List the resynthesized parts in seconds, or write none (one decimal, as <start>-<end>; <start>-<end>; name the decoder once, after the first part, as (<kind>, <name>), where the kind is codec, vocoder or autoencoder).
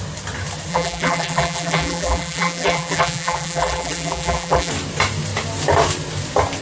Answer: 0.7-4.7 (vocoder, BigVGAN v2)